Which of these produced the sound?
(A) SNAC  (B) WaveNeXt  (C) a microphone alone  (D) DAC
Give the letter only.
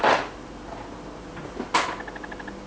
C